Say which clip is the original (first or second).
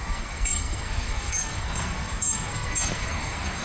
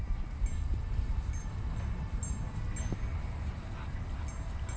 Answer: second